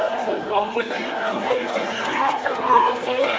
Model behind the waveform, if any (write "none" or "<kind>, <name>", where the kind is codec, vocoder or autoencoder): codec, SNAC